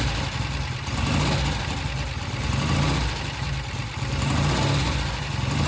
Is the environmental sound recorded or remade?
recorded